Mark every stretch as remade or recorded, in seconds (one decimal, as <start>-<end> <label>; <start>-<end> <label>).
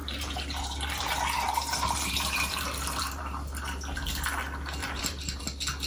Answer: 0.0-3.2 remade; 3.2-4.8 recorded; 4.8-5.4 remade; 5.4-5.9 recorded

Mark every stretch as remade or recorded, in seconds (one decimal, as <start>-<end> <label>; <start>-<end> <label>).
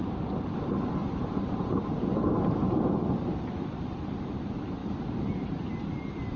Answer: 0.0-1.0 recorded; 1.0-1.7 remade; 1.7-6.4 recorded